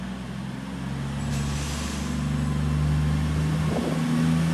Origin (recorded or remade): recorded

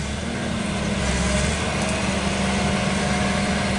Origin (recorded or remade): recorded